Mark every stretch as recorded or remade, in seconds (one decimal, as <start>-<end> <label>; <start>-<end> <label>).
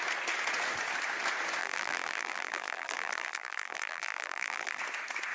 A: 0.0-1.6 recorded; 1.6-4.8 remade; 4.8-5.3 recorded